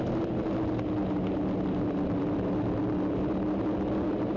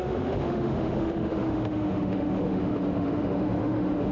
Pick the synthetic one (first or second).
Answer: second